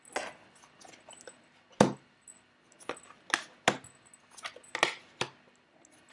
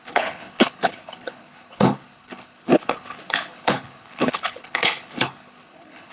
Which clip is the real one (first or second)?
first